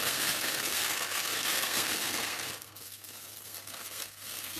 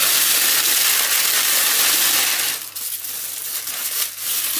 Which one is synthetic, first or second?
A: first